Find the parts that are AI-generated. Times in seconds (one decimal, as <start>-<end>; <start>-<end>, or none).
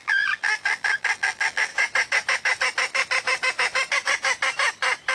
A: 0.0-1.7